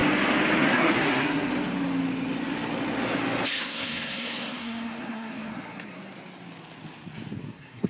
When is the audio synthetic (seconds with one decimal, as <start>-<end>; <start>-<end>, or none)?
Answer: 0.6-1.5; 3.6-6.0; 7.4-7.9